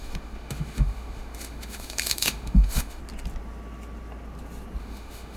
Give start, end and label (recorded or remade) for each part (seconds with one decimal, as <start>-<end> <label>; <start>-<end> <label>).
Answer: 0.0-3.0 remade; 3.0-4.8 recorded; 4.8-5.4 remade

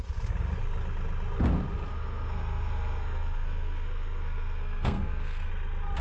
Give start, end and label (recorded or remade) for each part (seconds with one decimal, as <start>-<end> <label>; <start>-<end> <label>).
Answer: 0.0-1.9 recorded; 1.9-5.5 remade; 5.5-6.0 recorded

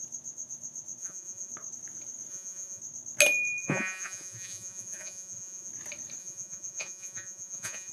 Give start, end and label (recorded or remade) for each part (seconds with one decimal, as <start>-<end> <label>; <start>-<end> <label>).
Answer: 0.0-1.0 recorded; 1.0-1.5 remade; 1.5-2.3 recorded; 2.3-2.8 remade; 2.8-3.6 recorded; 3.6-5.7 remade; 5.7-6.2 recorded; 6.2-7.9 remade

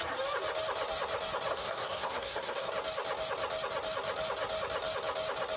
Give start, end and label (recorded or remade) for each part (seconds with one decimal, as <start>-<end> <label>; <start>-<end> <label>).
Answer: 0.0-1.5 recorded; 1.5-2.7 remade; 2.7-5.6 recorded

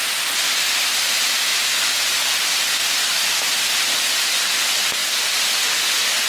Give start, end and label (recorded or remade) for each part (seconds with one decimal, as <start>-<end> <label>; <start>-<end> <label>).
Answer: 0.0-6.3 recorded

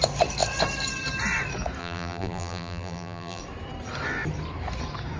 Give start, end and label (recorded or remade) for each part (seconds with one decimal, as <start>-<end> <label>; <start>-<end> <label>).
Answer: 0.0-1.8 recorded; 1.8-3.4 remade; 3.4-5.2 recorded